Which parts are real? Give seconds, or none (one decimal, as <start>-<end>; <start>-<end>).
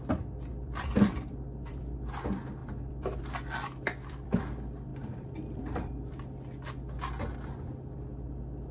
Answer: 0.0-0.5; 1.8-2.6; 3.2-3.9; 4.4-4.9; 6.7-8.7